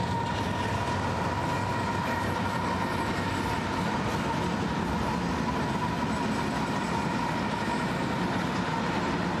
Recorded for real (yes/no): yes